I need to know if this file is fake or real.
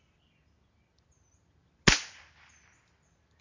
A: real